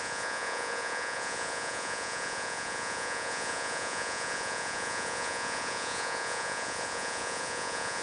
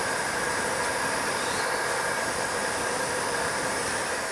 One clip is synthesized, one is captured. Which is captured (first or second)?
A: second